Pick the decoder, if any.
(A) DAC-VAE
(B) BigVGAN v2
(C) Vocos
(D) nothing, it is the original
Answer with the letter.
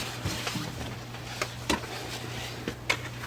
D